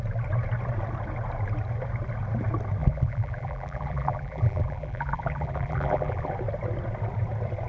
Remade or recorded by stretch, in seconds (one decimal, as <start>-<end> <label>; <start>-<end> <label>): 0.0-2.8 recorded; 2.8-6.3 remade; 6.3-7.7 recorded